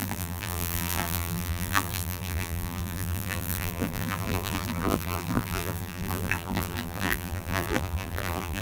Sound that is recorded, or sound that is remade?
remade